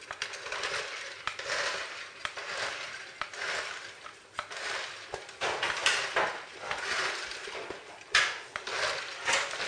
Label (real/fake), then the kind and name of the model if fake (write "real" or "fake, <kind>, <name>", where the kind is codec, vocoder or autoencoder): real